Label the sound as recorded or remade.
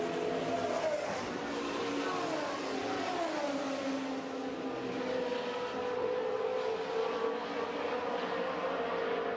recorded